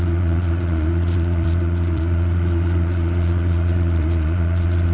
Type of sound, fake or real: fake